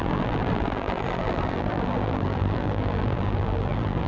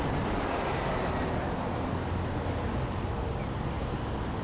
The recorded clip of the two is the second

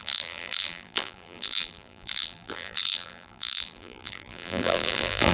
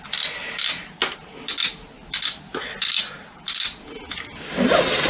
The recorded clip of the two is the second